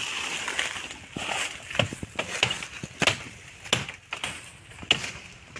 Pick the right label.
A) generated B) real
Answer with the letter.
B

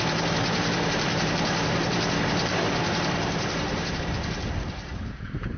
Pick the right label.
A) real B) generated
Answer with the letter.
B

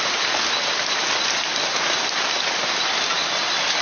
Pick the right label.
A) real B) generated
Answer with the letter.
A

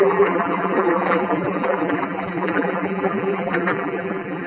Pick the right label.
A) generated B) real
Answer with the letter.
A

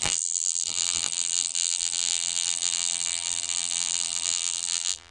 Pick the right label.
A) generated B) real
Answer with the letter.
A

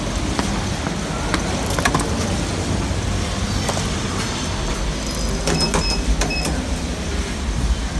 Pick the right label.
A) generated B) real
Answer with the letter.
B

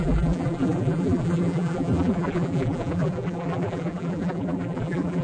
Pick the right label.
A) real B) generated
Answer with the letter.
B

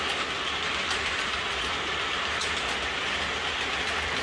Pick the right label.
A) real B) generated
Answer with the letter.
A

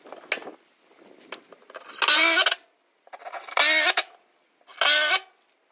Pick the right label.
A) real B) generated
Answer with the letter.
A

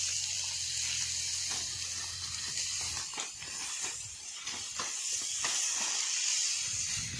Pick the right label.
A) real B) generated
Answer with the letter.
A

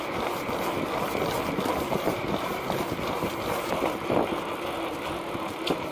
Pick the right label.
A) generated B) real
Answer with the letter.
B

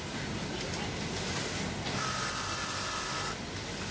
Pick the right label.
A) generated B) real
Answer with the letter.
A